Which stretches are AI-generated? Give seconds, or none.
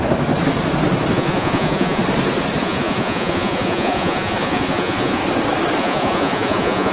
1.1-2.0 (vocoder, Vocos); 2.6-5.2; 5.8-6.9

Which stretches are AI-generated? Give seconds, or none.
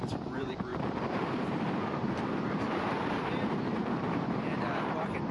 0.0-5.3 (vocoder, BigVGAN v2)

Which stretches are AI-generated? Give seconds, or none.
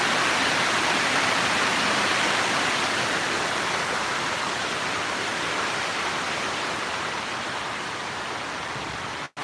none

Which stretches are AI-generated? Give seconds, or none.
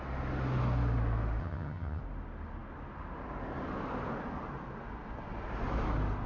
1.4-2.0 (vocoder, HiFi-GAN)